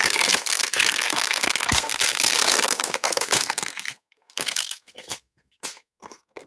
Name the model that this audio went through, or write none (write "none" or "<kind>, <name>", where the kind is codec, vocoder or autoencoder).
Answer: codec, SNAC